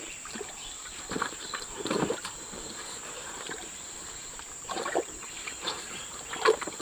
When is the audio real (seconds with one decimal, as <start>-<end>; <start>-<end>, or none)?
none